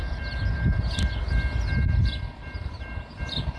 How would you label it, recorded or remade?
recorded